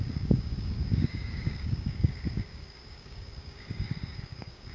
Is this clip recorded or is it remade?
remade